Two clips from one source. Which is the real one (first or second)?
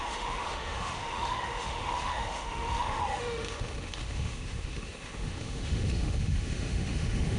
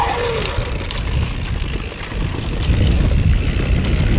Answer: second